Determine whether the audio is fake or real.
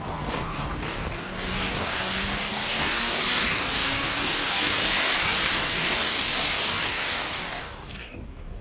fake